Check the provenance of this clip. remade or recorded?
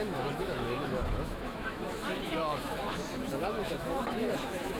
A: remade